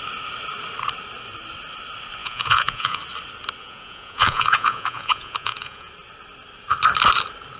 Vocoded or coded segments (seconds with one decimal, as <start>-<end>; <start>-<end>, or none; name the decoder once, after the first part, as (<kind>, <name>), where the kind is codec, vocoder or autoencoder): 2.2-3.0 (vocoder, Vocos); 3.6-5.9